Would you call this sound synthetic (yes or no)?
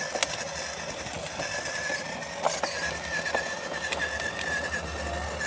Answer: no